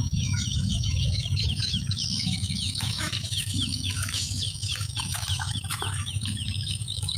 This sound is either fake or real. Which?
fake